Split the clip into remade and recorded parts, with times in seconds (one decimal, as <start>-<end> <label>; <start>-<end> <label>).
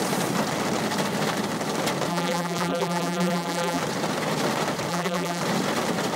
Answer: 0.0-2.1 recorded; 2.1-3.8 remade; 3.8-4.9 recorded; 4.9-5.4 remade; 5.4-6.2 recorded